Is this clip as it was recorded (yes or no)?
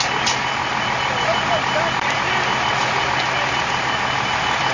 yes